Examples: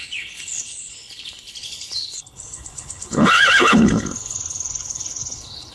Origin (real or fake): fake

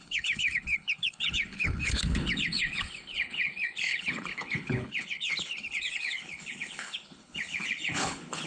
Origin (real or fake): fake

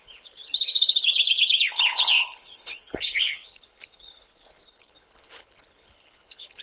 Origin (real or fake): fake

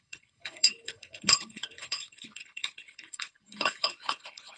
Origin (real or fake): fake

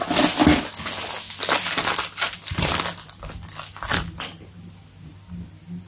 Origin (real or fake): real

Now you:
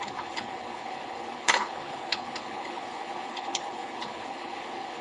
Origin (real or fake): fake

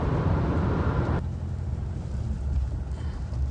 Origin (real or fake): real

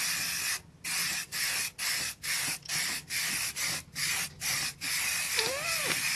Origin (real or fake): real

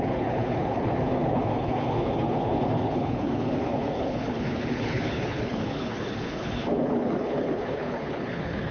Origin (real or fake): fake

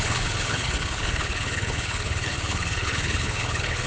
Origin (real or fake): fake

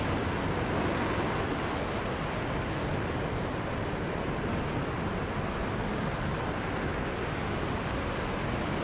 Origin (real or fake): real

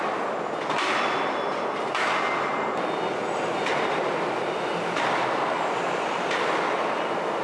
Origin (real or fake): real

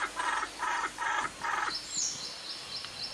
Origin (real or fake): real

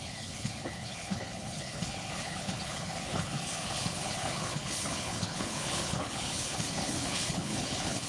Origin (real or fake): fake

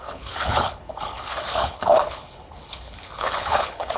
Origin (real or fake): fake